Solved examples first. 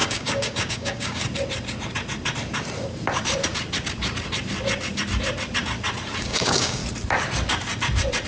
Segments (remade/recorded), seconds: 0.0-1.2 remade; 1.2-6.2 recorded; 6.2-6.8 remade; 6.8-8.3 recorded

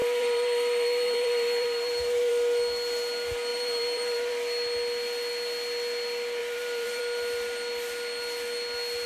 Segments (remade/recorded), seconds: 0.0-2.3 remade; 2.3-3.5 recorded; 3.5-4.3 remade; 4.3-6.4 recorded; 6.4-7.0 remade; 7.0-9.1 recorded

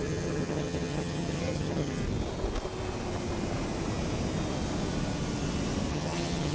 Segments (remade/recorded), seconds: 0.0-2.0 remade; 2.0-5.9 recorded; 5.9-6.5 remade

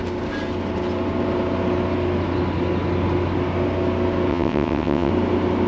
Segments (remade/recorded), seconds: 0.0-4.3 recorded; 4.3-5.1 remade; 5.1-5.7 recorded